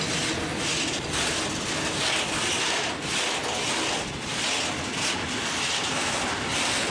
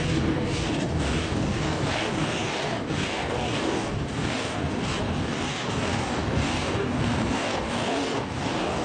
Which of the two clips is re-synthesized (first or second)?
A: second